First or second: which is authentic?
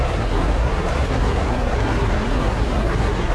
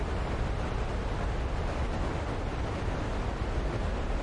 second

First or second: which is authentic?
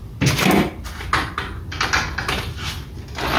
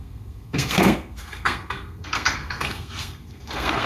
first